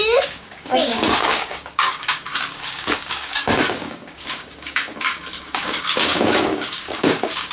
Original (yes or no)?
no